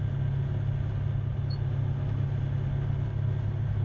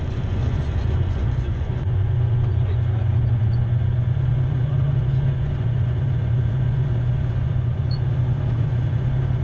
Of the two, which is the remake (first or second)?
second